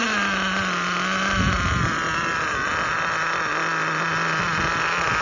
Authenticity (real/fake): real